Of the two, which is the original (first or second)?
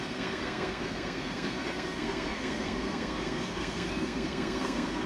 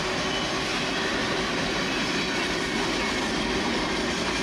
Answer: second